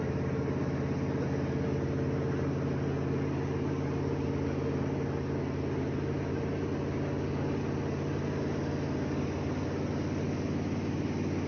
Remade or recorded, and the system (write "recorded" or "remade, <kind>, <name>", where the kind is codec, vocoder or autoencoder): recorded